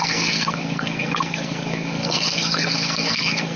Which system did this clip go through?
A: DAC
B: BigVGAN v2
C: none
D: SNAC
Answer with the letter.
D